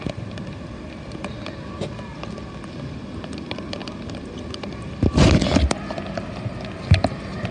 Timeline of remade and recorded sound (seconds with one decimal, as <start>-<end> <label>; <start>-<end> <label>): 0.0-7.5 recorded

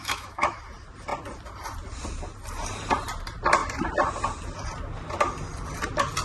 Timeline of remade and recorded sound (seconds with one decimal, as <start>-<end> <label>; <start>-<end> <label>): 0.0-0.6 remade; 0.6-6.2 recorded

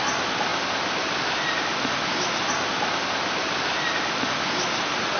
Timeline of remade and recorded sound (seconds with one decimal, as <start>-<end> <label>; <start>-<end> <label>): 0.0-5.2 recorded

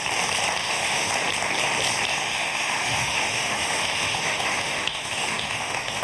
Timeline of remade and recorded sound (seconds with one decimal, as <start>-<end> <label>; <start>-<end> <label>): 0.0-0.6 recorded; 0.6-1.1 remade; 1.1-2.1 recorded; 2.1-6.0 remade

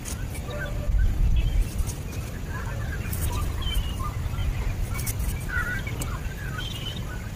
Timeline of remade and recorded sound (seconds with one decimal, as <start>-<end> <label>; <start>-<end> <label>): 0.0-7.4 recorded

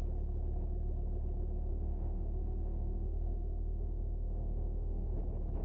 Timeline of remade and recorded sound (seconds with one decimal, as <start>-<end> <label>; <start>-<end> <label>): 0.0-1.7 recorded; 1.7-5.1 remade; 5.1-5.6 recorded

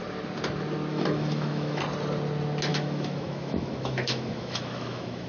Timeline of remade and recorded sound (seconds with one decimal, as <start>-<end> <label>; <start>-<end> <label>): 0.0-0.9 recorded; 0.9-1.8 remade; 1.8-2.7 recorded; 2.7-5.3 remade

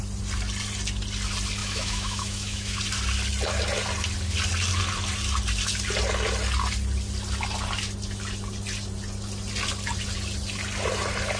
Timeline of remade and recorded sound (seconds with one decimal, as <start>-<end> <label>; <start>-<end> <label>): 0.0-1.6 recorded; 1.6-2.8 remade; 2.8-11.4 recorded